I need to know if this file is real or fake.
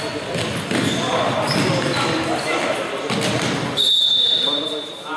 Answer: real